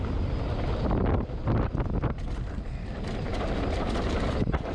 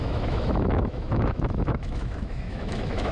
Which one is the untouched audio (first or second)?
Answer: first